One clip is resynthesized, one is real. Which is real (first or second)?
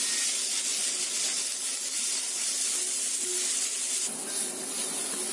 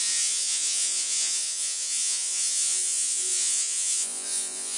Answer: first